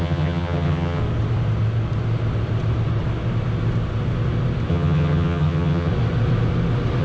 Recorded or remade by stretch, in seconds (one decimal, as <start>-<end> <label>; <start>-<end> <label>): 0.0-1.0 remade; 1.0-4.7 recorded; 4.7-5.9 remade; 5.9-7.0 recorded